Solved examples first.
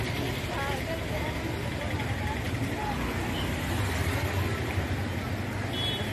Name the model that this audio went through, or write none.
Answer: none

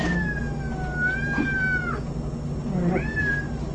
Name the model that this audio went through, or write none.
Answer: none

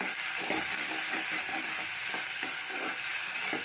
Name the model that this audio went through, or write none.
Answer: none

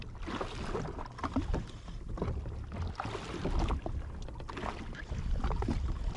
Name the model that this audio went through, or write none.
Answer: none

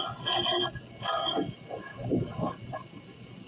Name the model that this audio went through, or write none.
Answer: none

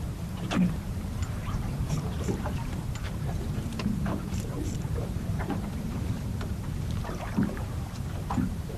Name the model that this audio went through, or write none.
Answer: vocoder, BigVGAN v2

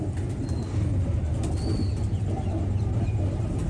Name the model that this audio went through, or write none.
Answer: none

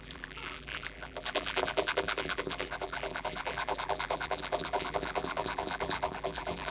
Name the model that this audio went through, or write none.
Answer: vocoder, BigVGAN v2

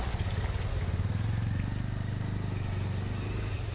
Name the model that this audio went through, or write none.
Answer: none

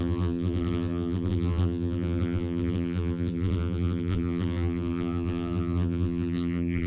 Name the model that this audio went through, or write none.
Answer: vocoder, BigVGAN v2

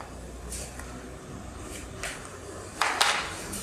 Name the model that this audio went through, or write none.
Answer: vocoder, BigVGAN v2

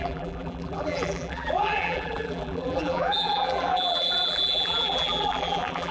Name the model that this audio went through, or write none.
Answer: vocoder, BigVGAN v2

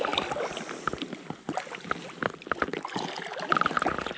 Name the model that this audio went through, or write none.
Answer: none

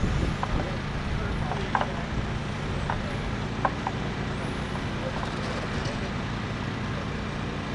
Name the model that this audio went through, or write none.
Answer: none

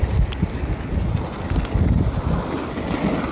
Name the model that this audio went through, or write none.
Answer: none